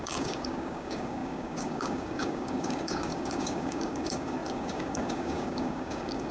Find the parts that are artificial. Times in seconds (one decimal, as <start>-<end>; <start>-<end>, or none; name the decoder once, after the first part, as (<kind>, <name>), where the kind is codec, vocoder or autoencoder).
0.0-6.3 (codec, DAC)

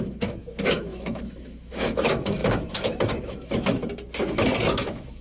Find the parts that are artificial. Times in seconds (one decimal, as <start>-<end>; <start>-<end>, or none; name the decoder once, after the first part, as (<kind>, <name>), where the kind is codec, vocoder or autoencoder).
0.0-3.8 (autoencoder, DAC-VAE); 4.7-5.2

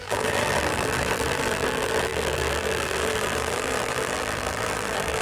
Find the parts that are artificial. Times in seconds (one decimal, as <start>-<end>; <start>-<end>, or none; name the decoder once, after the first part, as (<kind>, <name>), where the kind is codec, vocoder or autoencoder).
0.0-5.2 (vocoder, BigVGAN v2)

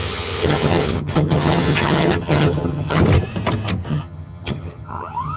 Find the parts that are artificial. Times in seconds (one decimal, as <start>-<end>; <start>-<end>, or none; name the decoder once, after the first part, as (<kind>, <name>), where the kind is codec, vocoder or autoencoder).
0.0-3.0 (vocoder, HiFi-GAN); 3.9-5.4

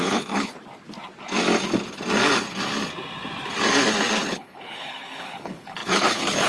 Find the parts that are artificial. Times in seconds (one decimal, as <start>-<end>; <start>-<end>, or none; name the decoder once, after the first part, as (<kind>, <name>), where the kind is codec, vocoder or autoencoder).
0.0-0.5 (codec, HILCodec); 4.2-6.5

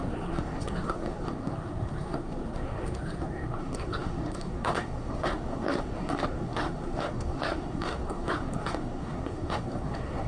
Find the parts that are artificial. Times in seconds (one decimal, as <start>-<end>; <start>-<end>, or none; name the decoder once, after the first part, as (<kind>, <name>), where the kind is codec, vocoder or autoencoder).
0.0-10.3 (codec, SNAC)